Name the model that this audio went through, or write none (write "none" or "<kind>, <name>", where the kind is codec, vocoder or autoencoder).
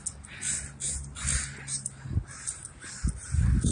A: none